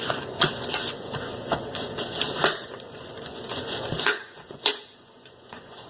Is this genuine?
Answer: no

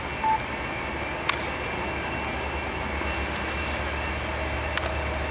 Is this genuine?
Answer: yes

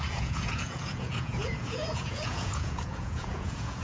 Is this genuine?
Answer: no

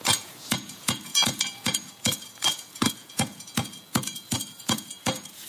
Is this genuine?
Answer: no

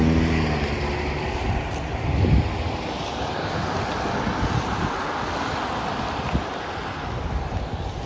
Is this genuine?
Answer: yes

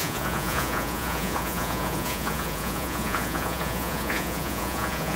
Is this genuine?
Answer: no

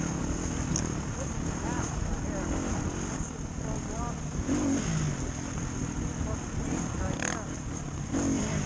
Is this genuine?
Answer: yes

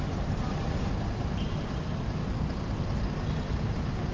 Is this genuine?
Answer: yes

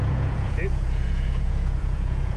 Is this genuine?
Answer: no